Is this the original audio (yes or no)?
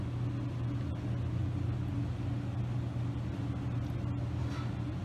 yes